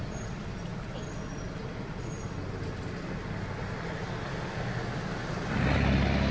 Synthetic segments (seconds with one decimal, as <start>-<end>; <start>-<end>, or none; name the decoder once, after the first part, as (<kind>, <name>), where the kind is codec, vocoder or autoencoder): none